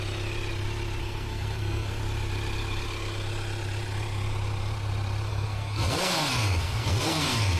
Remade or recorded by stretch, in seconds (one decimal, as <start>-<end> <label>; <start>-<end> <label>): 0.0-1.0 recorded; 1.0-2.0 remade; 2.0-5.3 recorded; 5.3-7.6 remade